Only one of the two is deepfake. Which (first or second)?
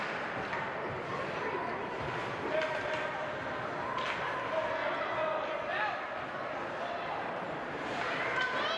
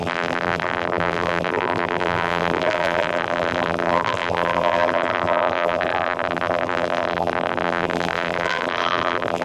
second